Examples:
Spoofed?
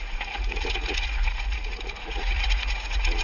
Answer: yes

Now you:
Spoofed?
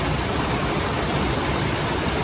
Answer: no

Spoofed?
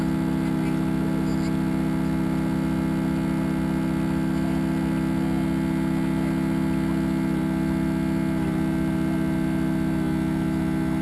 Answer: no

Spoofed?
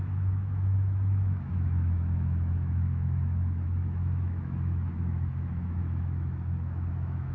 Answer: yes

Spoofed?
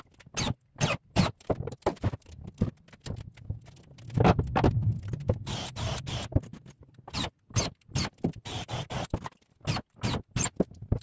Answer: no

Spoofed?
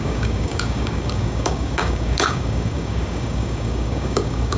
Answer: yes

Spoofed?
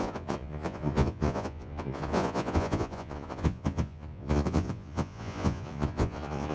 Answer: yes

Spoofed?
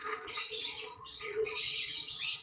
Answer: yes